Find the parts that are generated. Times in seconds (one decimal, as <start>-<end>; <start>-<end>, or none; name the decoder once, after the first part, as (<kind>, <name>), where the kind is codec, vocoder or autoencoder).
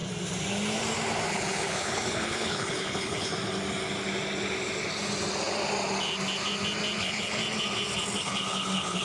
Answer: 1.3-3.3 (codec, HILCodec); 7.0-7.4; 8.2-9.0